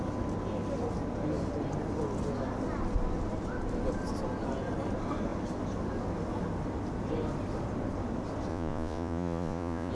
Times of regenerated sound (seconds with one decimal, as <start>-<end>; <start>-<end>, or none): 8.5-9.9